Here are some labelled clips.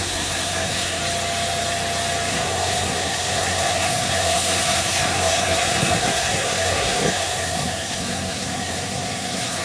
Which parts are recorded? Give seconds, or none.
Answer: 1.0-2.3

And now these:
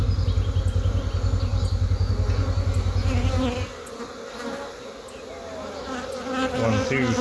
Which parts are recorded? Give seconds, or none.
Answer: 0.0-7.2

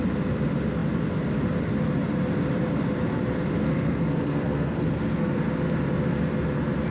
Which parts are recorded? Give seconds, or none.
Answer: 0.0-3.6; 5.4-6.9

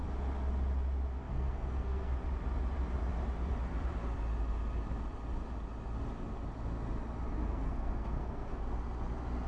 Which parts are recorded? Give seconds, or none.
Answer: 0.0-1.2; 2.1-7.4; 8.6-9.5

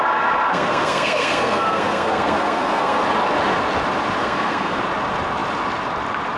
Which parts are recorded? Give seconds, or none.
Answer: 0.0-0.5; 3.0-4.2; 4.8-6.4